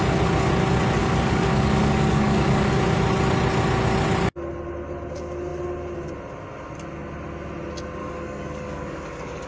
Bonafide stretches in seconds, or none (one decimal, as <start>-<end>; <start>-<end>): 0.0-1.0; 2.7-8.0